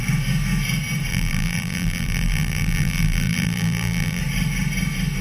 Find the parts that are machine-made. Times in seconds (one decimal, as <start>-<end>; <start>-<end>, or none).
1.1-4.2

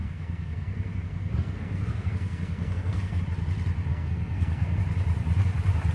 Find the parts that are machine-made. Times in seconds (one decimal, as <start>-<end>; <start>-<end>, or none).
0.0-3.2; 3.9-4.8

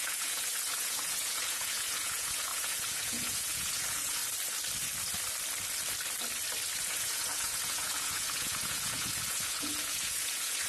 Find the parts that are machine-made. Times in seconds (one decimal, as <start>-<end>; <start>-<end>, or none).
0.0-4.2; 6.8-10.7